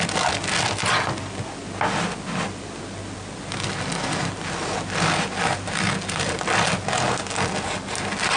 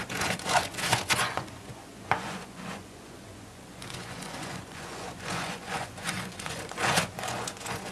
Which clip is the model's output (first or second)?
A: second